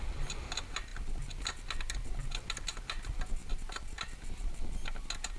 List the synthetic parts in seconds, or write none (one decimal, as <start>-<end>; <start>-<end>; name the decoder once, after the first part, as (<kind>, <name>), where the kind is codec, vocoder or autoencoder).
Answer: none